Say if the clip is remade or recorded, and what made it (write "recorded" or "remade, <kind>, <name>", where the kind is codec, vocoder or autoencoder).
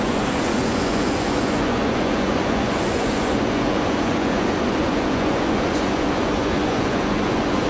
remade, vocoder, Vocos